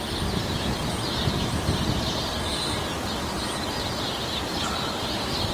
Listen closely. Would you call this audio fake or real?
real